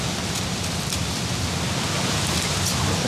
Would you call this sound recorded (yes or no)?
no